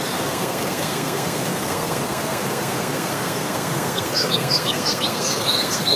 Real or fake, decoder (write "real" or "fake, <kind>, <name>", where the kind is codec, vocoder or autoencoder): fake, codec, SNAC